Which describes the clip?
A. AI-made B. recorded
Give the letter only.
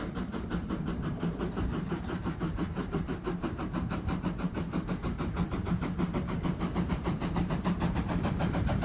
A